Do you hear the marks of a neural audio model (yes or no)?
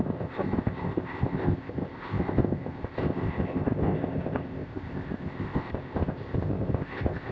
yes